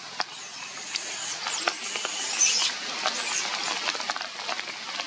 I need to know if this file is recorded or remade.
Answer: recorded